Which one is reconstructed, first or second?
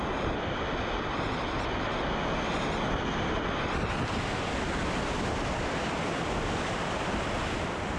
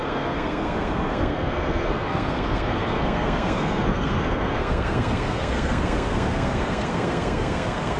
second